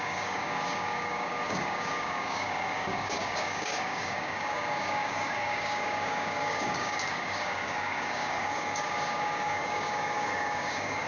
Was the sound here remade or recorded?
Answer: remade